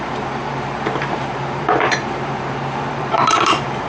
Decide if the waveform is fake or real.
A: fake